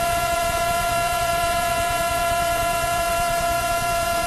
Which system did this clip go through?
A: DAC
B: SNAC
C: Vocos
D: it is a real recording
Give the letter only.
C